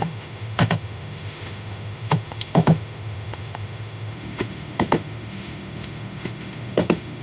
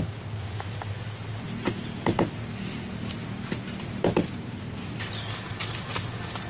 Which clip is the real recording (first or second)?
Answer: second